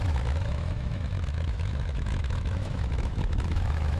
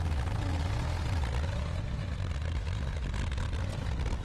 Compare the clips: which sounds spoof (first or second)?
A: first